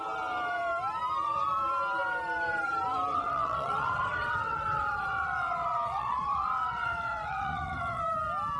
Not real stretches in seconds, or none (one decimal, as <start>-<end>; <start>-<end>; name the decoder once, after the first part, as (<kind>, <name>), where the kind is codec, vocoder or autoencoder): 3.1-8.0 (vocoder, WaveNeXt)